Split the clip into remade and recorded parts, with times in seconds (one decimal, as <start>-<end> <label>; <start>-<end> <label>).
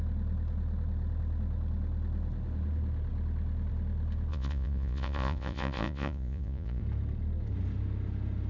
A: 0.0-4.3 recorded; 4.3-6.8 remade; 6.8-8.5 recorded